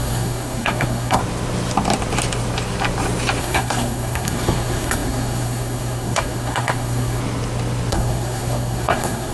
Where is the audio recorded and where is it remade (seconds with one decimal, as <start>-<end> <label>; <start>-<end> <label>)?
0.0-1.2 remade; 1.2-3.4 recorded; 3.4-7.2 remade; 7.2-7.9 recorded; 7.9-9.3 remade

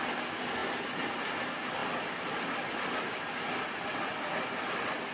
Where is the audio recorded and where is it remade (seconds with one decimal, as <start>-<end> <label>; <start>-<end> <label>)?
0.0-5.1 recorded

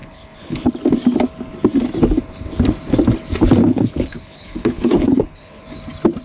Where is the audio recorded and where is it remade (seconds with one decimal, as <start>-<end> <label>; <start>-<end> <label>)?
0.0-0.7 remade; 0.7-3.6 recorded; 3.6-5.6 remade; 5.6-6.2 recorded